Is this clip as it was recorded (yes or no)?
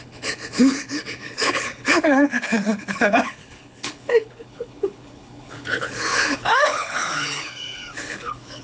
no